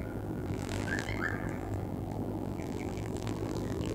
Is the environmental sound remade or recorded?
remade